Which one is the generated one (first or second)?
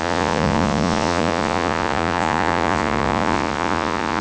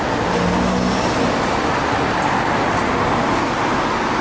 first